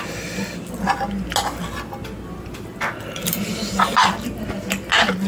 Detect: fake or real real